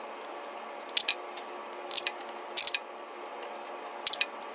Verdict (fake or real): real